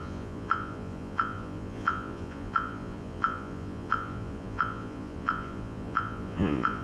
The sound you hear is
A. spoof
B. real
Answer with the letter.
A